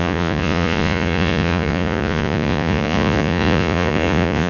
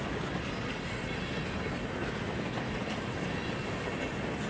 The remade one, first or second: first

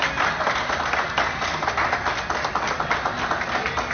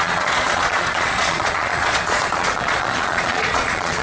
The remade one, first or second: second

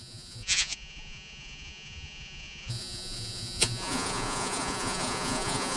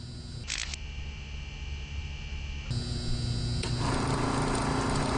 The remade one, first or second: first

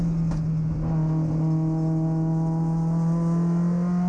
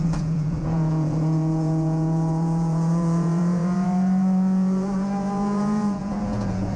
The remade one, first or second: second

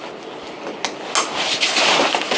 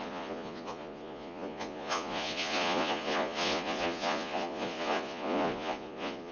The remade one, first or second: second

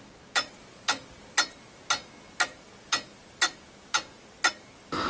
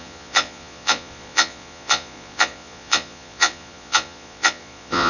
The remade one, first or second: second